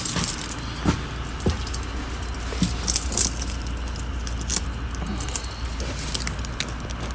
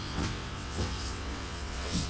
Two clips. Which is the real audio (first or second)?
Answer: first